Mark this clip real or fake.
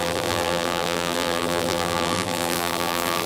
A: fake